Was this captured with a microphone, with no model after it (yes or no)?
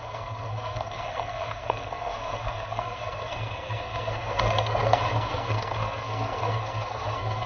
no